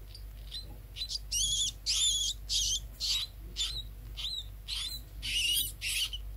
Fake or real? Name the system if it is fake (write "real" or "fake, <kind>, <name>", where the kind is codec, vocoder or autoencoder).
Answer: real